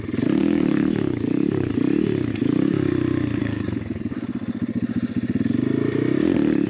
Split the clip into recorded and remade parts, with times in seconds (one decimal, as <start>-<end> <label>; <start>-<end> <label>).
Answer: 0.0-0.4 recorded; 0.4-1.7 remade; 1.7-2.3 recorded; 2.3-2.9 remade; 2.9-3.4 recorded; 3.4-4.0 remade; 4.0-6.7 recorded

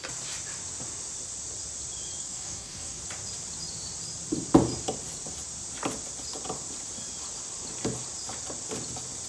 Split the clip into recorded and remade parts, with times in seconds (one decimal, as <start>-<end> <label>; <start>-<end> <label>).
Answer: 0.0-2.2 recorded; 2.2-3.0 remade; 3.0-9.3 recorded

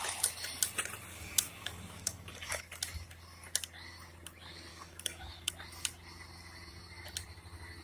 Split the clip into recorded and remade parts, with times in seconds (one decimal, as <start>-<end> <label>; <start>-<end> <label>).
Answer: 0.0-1.1 recorded; 1.1-2.6 remade; 2.6-4.7 recorded; 4.7-5.5 remade; 5.5-7.8 recorded